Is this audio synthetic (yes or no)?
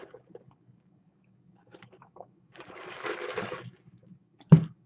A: yes